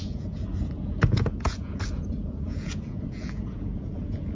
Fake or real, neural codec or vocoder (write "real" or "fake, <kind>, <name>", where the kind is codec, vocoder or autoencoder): fake, vocoder, Vocos